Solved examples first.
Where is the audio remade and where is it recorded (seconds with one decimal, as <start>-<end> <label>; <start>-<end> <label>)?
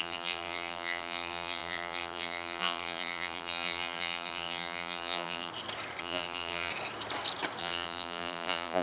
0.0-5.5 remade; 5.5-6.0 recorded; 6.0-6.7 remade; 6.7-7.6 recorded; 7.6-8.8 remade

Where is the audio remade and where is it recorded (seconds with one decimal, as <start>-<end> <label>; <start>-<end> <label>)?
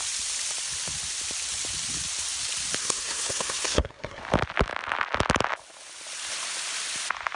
0.0-2.8 recorded; 2.8-4.2 remade; 4.2-7.4 recorded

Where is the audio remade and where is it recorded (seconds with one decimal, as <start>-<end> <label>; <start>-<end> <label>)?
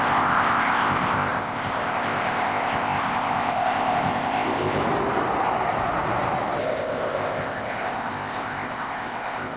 0.0-4.8 remade; 4.8-6.6 recorded; 6.6-9.6 remade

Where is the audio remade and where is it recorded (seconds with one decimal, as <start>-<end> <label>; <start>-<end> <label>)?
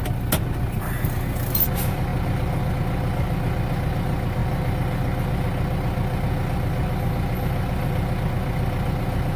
0.0-9.4 recorded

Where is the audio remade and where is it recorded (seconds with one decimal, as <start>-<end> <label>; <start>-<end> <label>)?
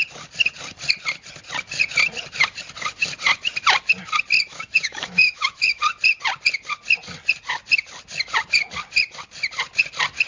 0.0-4.5 recorded; 4.5-5.8 remade; 5.8-10.3 recorded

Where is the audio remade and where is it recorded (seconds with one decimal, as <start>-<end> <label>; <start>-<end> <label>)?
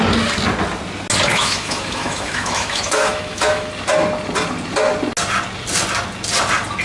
0.0-1.3 recorded; 1.3-3.7 remade; 3.7-6.8 recorded